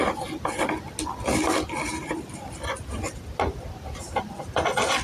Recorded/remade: recorded